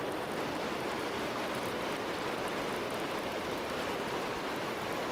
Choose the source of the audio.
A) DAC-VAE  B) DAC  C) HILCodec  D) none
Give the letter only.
D